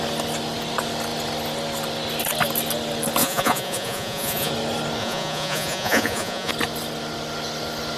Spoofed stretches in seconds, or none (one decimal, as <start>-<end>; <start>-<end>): 3.2-4.5; 5.0-6.5